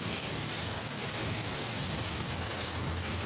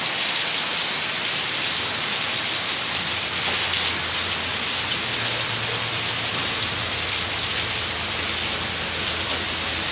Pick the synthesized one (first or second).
first